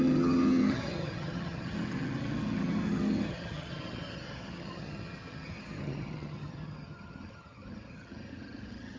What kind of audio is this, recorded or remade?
remade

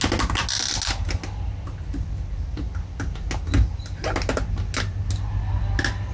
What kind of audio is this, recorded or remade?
recorded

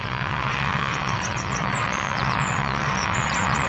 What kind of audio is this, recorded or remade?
remade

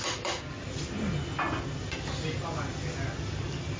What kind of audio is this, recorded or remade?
recorded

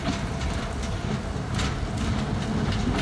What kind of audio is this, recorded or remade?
recorded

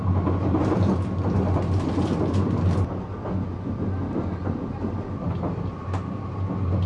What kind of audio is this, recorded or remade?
recorded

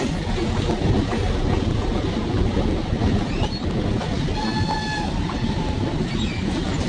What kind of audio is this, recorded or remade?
recorded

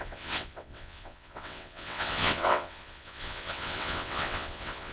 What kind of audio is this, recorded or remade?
remade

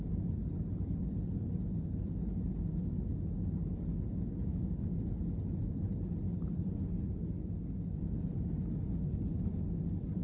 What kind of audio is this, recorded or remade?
recorded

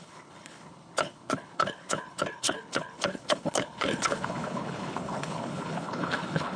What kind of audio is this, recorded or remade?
remade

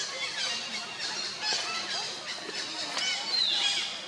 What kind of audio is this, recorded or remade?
recorded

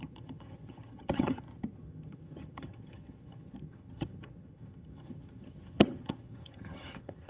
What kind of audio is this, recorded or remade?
remade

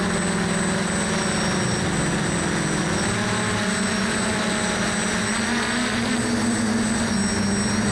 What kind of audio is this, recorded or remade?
recorded